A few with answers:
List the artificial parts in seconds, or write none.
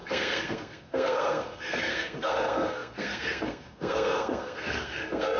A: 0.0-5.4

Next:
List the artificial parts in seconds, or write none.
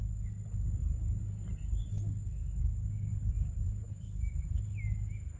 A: 0.8-1.8; 3.1-4.6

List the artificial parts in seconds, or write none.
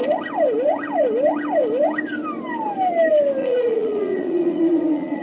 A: 3.4-5.2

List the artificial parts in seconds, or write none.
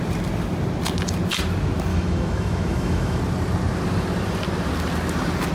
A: 1.9-3.2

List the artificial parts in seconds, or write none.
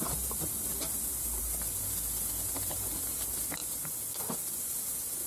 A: none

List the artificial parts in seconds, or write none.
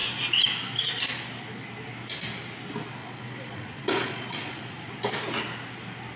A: 3.0-4.9